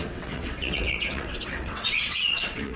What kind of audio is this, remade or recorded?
remade